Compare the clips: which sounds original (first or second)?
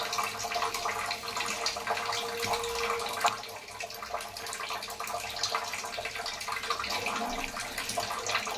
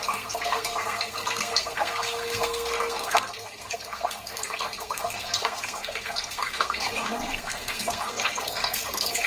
first